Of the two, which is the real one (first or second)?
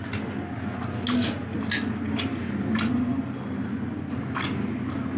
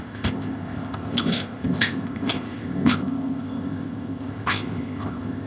first